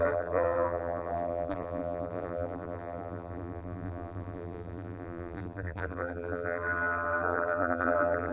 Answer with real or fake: fake